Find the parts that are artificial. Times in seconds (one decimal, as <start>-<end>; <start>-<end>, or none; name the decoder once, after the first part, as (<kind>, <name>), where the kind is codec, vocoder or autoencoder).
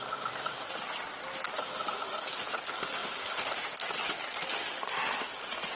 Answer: none